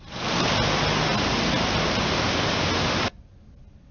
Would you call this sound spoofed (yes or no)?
no